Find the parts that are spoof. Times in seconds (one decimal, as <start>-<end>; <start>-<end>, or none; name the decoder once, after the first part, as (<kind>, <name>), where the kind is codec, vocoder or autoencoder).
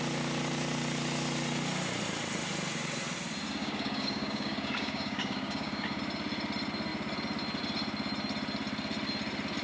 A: 3.6-6.0 (codec, DAC)